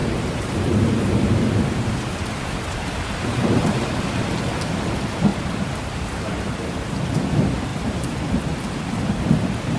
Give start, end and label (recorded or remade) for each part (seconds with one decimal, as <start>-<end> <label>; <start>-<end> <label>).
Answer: 0.0-4.0 remade; 4.0-5.3 recorded; 5.3-7.1 remade; 7.1-9.8 recorded